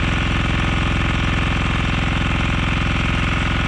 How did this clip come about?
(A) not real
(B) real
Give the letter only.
B